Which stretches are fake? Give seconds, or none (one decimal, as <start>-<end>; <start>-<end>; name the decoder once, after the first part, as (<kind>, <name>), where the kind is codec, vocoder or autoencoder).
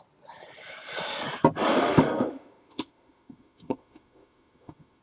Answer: 1.7-5.0 (autoencoder, DAC-VAE)